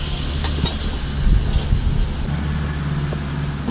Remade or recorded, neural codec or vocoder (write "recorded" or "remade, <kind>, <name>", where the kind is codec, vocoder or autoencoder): recorded